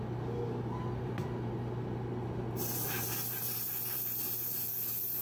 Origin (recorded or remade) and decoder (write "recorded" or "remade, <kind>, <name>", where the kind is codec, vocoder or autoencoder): recorded